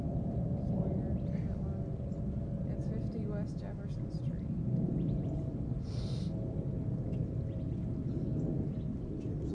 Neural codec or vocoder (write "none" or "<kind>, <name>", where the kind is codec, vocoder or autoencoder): none